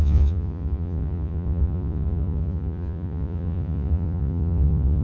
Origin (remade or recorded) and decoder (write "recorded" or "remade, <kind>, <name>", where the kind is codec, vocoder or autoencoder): remade, vocoder, Vocos